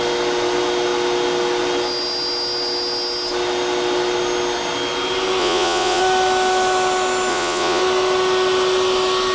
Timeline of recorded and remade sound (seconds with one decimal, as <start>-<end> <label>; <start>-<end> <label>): 0.0-5.4 recorded; 5.4-6.0 remade; 6.0-7.3 recorded; 7.3-7.8 remade; 7.8-9.3 recorded